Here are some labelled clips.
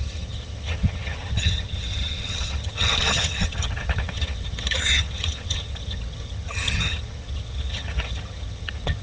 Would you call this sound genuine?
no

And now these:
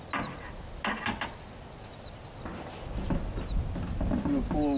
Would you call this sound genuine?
yes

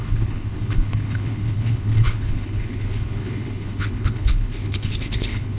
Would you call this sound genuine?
no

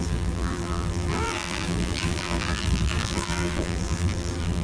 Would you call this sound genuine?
no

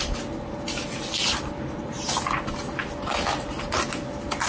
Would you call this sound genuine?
yes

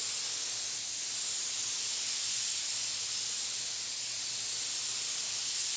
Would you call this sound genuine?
yes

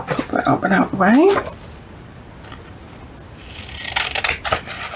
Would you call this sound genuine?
yes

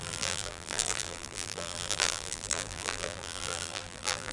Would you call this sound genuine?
no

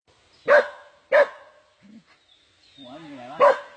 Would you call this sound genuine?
yes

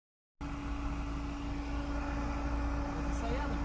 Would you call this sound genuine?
yes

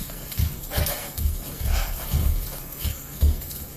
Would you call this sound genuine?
no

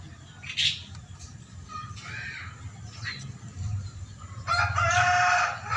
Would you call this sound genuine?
yes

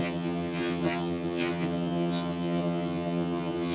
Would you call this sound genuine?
no